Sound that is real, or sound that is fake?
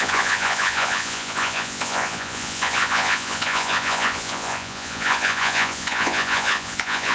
fake